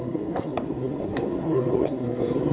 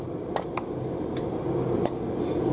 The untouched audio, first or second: second